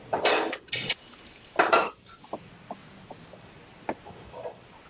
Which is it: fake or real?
real